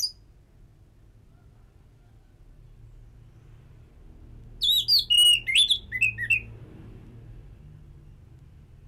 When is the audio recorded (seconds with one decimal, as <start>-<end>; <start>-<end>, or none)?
0.0-8.9